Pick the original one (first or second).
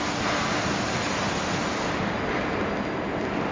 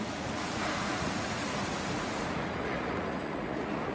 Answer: first